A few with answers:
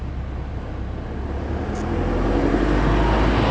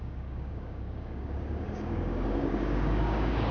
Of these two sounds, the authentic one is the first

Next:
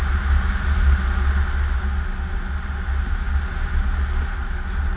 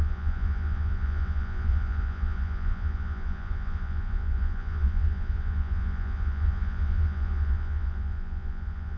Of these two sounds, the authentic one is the first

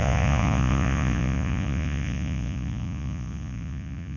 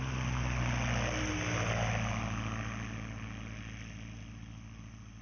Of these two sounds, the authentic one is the second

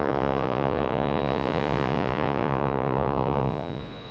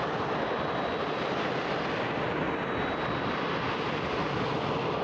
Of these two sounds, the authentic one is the second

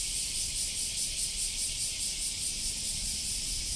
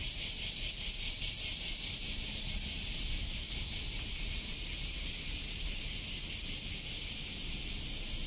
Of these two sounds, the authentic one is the second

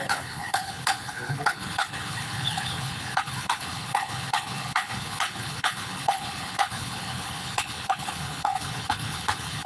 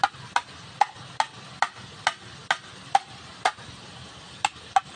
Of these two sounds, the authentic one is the second